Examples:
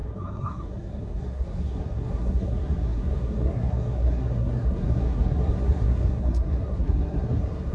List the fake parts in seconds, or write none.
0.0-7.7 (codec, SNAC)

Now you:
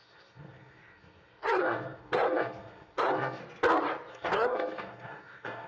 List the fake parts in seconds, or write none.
0.0-3.4 (codec, SNAC); 4.1-5.7